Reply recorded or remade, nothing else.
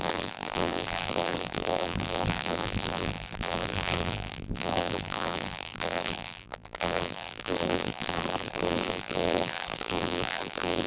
remade